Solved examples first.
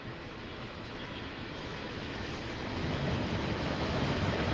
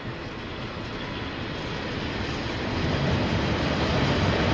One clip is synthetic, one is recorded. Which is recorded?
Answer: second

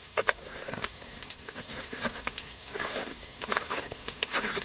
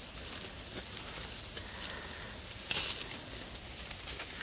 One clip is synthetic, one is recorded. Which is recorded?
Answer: second